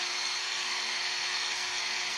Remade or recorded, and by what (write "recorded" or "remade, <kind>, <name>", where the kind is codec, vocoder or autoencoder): remade, codec, SNAC